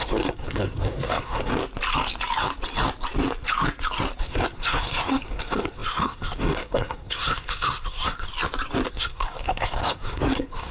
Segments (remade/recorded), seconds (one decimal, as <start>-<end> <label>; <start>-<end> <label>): 0.0-1.5 remade; 1.5-4.2 recorded; 4.2-8.3 remade; 8.3-8.9 recorded; 8.9-10.7 remade